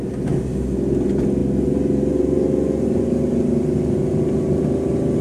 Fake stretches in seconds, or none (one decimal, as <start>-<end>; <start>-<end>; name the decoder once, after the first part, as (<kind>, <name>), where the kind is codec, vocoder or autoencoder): none